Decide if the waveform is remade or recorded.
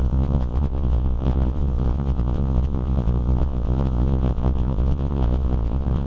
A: remade